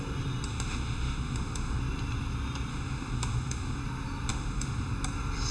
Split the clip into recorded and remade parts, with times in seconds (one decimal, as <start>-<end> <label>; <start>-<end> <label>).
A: 0.0-0.5 recorded; 0.5-1.8 remade; 1.8-2.7 recorded; 2.7-3.8 remade; 3.8-4.3 recorded; 4.3-4.9 remade; 4.9-5.5 recorded